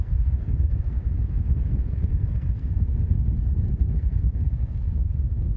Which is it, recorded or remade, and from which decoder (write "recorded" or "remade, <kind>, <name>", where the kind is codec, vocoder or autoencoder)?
remade, codec, SNAC